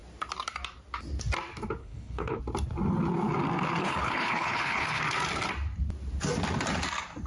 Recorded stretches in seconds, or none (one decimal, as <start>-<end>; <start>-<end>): 0.0-1.8; 2.4-3.8; 5.0-7.3